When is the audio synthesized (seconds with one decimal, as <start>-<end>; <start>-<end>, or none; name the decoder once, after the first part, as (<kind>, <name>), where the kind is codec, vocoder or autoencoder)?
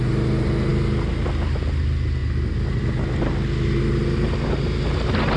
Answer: none